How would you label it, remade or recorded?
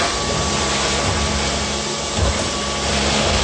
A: recorded